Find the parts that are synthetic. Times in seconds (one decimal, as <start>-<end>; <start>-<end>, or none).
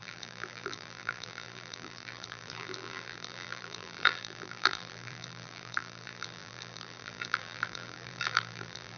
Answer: 0.0-9.0